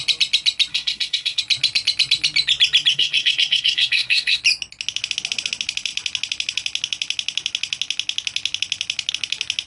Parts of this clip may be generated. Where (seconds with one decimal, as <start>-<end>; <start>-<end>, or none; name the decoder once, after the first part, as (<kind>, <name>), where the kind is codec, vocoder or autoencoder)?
0.7-1.4 (codec, SNAC); 2.9-4.4

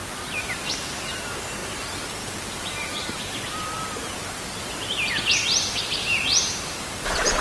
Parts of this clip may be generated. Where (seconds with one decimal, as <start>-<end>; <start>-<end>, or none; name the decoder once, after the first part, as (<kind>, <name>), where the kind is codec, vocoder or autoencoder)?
0.0-1.2 (vocoder, BigVGAN v2); 6.0-7.4

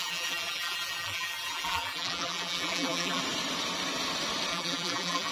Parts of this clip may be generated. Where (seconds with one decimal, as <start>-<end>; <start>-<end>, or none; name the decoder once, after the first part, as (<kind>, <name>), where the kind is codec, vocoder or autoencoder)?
0.0-3.2 (vocoder, BigVGAN v2); 4.5-5.3

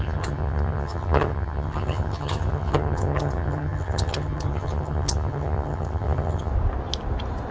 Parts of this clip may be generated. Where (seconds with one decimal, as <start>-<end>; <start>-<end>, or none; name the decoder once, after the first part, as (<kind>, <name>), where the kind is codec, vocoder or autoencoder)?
0.0-6.5 (vocoder, HiFi-GAN)